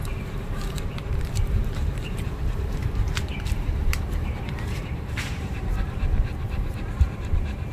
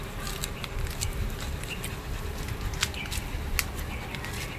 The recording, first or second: second